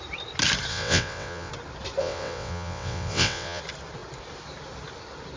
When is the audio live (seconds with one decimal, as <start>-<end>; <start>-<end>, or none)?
0.0-0.7; 1.5-2.0; 3.6-5.4